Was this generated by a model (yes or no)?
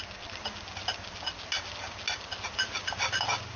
no